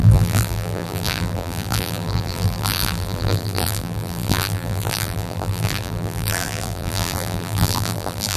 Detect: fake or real fake